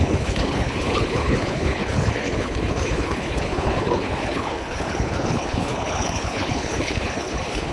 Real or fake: fake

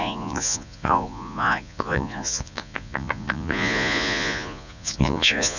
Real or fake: fake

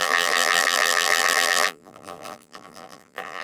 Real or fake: fake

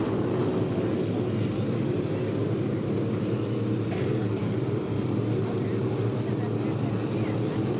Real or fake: real